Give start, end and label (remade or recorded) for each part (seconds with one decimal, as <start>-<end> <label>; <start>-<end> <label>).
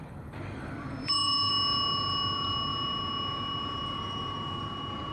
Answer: 0.0-1.5 remade; 1.5-5.1 recorded